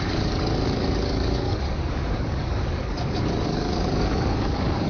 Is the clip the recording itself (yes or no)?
no